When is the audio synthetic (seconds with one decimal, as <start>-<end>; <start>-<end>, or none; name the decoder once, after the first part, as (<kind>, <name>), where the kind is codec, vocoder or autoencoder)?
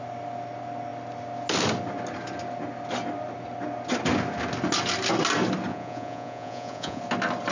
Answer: 5.7-7.0 (vocoder, Vocos)